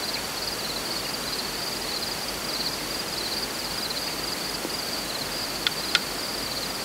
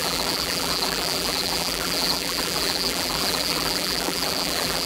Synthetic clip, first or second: second